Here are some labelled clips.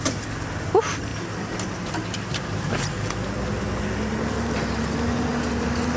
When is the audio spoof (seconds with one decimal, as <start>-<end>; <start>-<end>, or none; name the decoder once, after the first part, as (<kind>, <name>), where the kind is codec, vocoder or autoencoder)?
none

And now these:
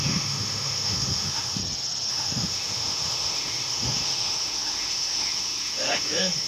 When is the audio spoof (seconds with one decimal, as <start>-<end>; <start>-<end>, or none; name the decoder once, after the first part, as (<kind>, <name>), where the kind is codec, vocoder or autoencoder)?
0.0-1.6 (autoencoder, DAC-VAE); 2.1-6.5

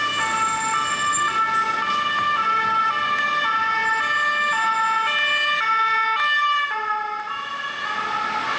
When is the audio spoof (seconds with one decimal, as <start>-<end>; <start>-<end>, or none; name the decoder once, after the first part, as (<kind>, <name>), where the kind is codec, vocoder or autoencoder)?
none

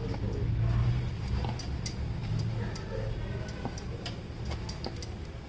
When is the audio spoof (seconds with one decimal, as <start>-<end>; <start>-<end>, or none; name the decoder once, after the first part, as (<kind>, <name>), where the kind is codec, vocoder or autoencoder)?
none

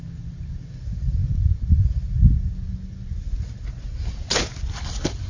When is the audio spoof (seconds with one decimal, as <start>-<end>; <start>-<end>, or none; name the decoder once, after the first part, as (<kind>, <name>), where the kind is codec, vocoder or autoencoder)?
none